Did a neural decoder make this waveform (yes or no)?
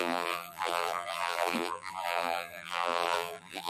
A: yes